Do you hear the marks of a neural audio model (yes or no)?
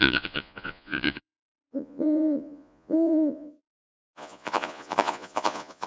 yes